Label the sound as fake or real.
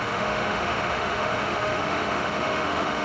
fake